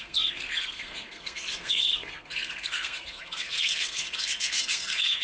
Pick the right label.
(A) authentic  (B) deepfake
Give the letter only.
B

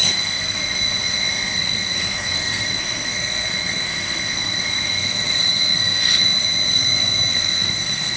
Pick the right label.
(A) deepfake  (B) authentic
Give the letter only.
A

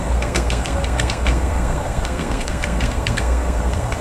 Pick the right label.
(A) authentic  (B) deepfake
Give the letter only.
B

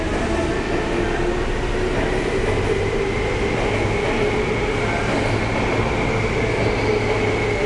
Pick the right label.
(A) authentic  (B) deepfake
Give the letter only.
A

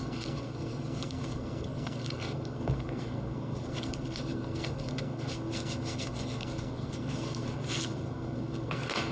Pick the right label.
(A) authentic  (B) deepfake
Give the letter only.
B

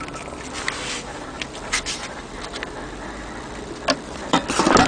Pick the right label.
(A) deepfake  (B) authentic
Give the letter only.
B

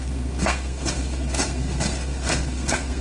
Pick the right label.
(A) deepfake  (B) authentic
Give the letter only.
A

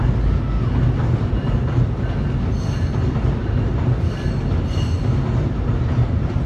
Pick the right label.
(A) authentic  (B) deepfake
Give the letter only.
A